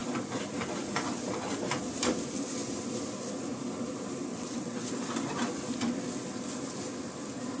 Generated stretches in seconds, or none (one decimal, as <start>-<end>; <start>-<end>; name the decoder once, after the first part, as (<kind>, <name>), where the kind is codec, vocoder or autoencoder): 4.3-4.9 (vocoder, WaveNeXt)